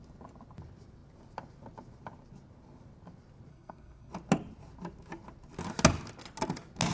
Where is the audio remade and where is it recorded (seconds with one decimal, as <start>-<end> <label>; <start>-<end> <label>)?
0.0-3.5 recorded; 3.5-4.1 remade; 4.1-6.9 recorded